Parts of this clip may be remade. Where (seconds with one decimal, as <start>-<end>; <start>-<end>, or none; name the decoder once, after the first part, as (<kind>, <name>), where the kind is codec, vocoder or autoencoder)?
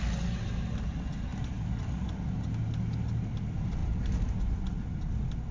3.8-4.5 (vocoder, BigVGAN v2)